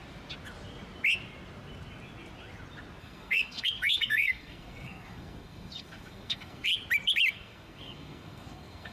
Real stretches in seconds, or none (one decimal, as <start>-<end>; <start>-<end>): 0.0-3.0; 6.7-7.3